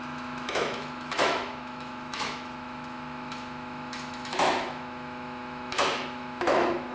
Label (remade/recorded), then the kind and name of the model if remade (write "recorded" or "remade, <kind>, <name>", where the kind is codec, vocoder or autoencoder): remade, autoencoder, DAC-VAE